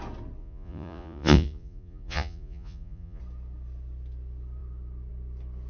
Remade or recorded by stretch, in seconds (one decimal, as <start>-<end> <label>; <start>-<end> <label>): 0.0-0.4 recorded; 0.4-3.2 remade; 3.2-5.7 recorded